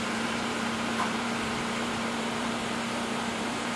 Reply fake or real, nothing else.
fake